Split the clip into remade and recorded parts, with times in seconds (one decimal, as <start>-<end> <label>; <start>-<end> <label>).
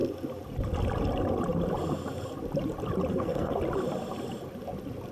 0.0-3.1 recorded; 3.1-3.6 remade; 3.6-5.1 recorded